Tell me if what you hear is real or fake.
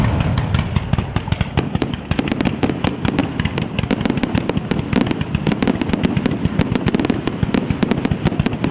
real